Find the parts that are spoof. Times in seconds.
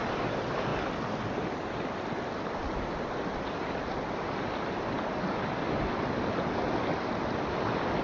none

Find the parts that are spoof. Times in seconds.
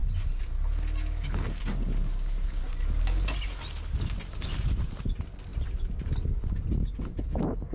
5.5-6.1 (vocoder, BigVGAN v2)